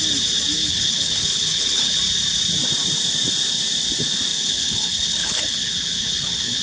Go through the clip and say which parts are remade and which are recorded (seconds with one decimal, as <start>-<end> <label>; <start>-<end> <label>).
0.0-0.6 recorded; 0.6-2.0 remade; 2.0-4.3 recorded; 4.3-6.6 remade